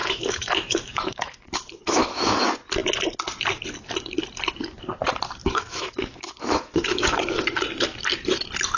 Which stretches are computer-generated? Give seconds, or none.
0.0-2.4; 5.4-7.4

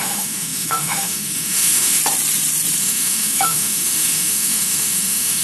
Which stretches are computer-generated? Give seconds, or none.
0.0-2.0; 2.8-5.4

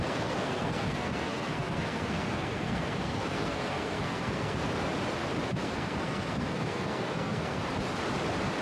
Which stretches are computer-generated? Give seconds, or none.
0.0-4.6; 5.6-7.6

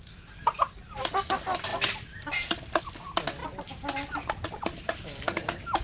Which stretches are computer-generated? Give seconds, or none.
none

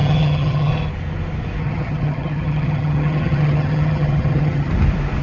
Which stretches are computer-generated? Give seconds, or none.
0.0-0.7; 1.6-4.7

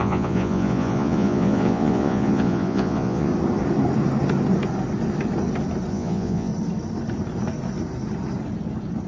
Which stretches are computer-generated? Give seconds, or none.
0.0-3.3; 5.9-6.5

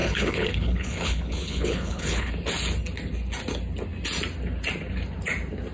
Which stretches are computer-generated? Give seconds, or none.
0.0-2.3

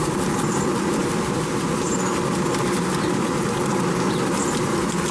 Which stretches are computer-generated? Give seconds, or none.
0.0-1.0; 4.1-5.1